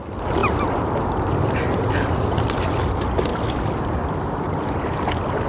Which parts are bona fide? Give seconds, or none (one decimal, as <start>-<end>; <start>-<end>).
0.0-5.5